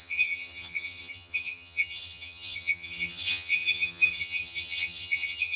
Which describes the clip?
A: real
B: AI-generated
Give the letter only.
B